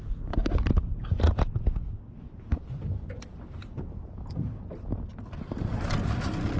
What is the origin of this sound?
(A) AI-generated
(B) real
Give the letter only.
B